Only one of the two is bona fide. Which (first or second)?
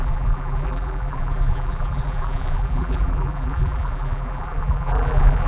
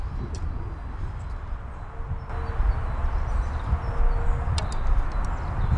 second